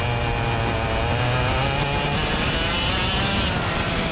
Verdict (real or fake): real